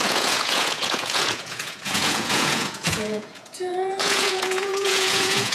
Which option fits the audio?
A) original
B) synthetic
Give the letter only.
B